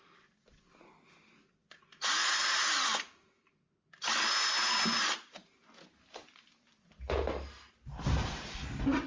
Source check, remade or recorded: recorded